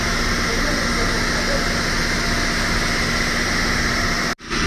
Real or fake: real